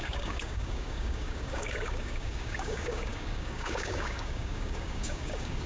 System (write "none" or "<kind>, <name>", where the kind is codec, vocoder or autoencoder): codec, DAC